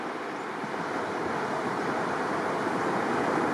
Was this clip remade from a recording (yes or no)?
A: no